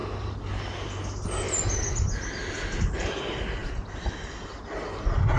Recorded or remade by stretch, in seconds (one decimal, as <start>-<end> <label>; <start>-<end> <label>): 0.0-5.4 recorded

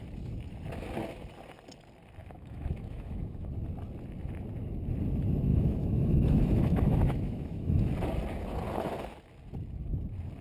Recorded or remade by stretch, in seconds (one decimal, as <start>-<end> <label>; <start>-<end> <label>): 0.0-2.2 recorded; 2.2-3.5 remade; 3.5-5.5 recorded; 5.5-7.9 remade; 7.9-10.4 recorded

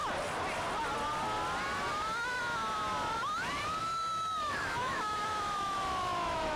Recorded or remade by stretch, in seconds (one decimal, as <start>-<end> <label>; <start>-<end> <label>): 0.0-3.8 recorded; 3.8-6.6 remade